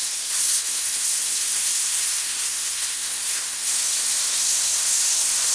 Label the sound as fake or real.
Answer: fake